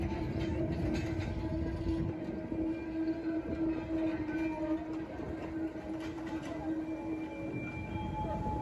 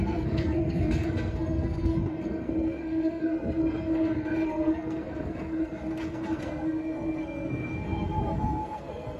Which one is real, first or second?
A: first